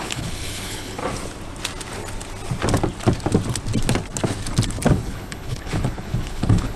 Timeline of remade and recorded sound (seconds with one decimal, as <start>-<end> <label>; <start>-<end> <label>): 0.0-1.0 remade; 1.0-4.9 recorded; 4.9-6.8 remade